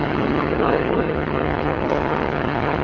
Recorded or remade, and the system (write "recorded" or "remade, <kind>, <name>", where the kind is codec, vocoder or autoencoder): remade, vocoder, HiFi-GAN